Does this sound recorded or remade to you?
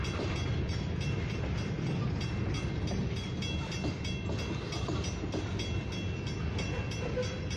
recorded